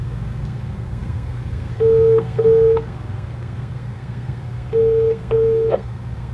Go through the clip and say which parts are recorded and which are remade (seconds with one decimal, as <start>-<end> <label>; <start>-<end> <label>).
0.0-6.3 remade